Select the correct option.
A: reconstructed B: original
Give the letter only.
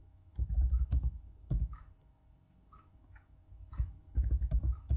A